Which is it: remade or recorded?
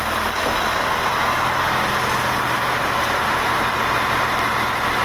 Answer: recorded